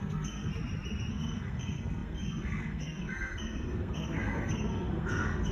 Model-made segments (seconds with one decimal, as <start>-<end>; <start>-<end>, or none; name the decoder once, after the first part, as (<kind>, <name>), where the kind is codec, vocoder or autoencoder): 0.0-0.5 (codec, SNAC); 1.1-5.5